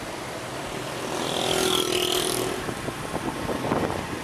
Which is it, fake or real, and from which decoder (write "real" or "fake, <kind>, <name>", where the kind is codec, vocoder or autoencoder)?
real